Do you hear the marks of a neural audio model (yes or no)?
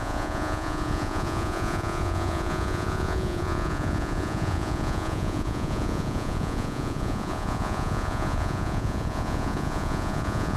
yes